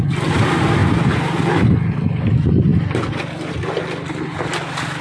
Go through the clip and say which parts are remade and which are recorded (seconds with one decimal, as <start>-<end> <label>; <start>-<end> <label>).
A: 0.0-5.0 recorded